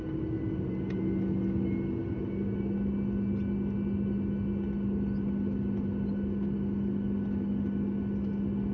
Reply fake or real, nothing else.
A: real